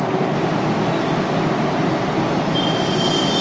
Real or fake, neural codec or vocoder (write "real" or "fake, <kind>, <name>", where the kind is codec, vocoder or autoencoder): real